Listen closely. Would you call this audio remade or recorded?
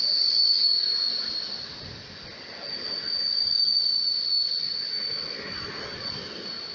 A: recorded